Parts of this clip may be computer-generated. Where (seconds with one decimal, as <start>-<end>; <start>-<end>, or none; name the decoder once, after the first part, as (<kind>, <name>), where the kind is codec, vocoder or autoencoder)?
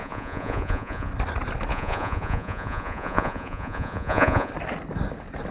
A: 0.0-1.1 (vocoder, Vocos); 1.7-4.5